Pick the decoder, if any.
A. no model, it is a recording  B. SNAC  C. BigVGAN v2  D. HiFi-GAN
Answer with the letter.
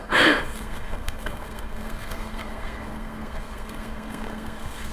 B